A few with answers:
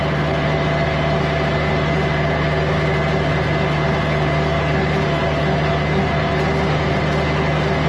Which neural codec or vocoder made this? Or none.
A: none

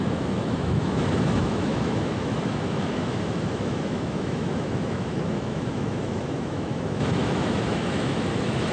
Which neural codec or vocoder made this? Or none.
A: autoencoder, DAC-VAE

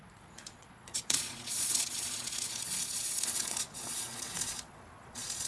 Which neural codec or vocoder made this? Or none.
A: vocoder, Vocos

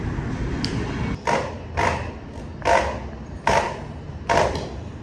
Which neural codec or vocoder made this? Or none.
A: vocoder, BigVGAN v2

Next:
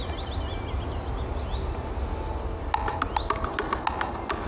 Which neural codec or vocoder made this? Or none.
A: none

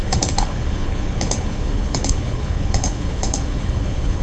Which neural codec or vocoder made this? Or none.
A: codec, HILCodec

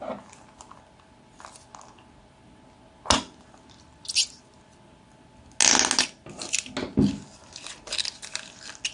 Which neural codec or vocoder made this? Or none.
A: none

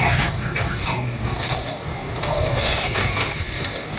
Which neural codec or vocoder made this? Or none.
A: codec, DAC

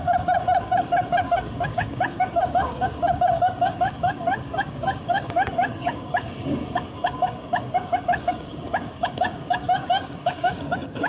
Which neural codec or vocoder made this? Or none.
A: codec, DAC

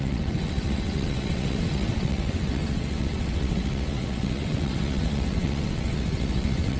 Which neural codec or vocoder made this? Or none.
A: vocoder, WaveNeXt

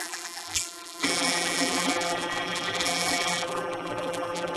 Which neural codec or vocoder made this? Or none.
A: vocoder, BigVGAN v2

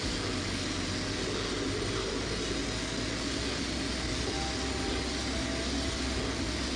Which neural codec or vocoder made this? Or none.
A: none